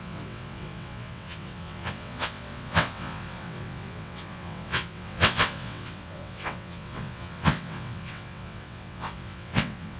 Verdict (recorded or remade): remade